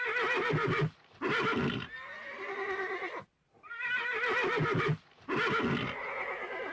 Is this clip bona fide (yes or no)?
yes